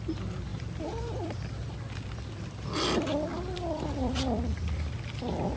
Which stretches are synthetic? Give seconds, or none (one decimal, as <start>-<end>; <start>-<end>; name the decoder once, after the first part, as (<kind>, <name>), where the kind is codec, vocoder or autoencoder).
0.5-2.3 (vocoder, BigVGAN v2); 3.3-5.6